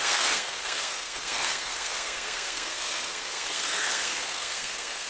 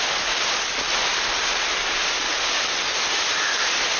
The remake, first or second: first